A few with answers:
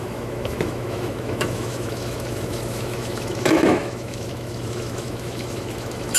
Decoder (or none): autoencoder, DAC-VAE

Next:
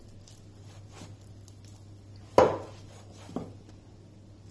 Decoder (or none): none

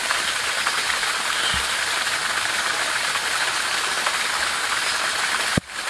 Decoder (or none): none